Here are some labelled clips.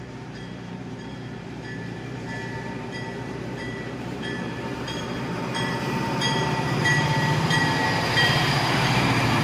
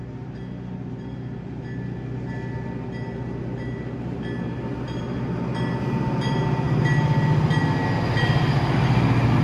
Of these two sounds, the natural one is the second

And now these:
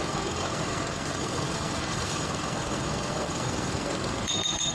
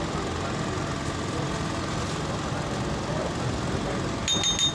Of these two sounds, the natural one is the second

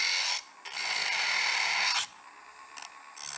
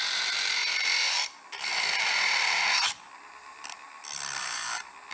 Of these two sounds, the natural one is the first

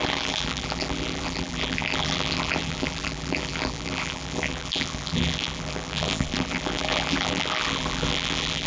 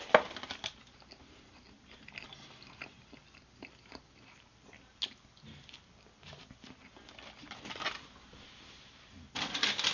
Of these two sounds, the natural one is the second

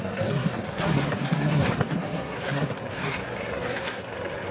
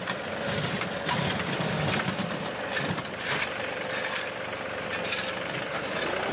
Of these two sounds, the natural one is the second